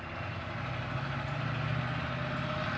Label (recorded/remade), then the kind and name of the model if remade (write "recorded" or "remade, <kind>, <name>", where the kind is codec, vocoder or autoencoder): recorded